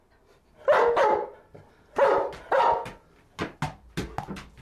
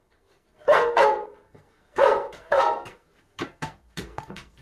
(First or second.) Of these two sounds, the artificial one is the second